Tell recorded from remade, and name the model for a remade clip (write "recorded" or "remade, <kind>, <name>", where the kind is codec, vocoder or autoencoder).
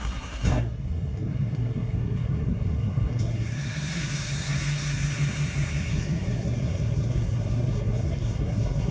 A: remade, codec, SNAC